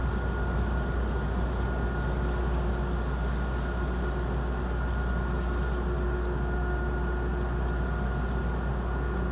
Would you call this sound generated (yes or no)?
no